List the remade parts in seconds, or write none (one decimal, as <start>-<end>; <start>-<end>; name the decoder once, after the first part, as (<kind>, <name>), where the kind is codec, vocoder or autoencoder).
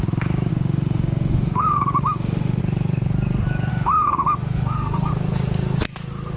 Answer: 0.5-2.6 (autoencoder, DAC-VAE); 3.7-5.1